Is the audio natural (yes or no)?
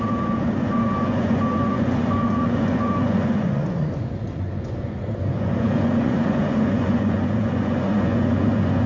no